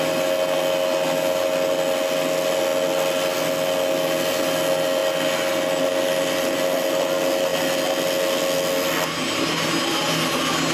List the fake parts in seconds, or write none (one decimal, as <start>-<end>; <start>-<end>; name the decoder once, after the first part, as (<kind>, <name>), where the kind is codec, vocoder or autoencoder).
none